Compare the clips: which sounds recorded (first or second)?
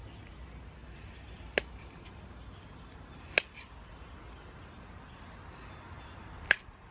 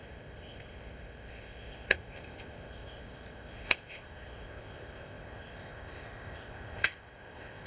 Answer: first